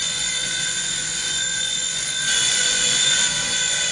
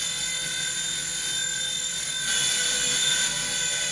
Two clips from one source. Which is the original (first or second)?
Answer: second